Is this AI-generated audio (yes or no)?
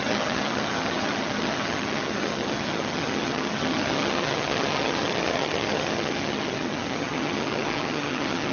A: yes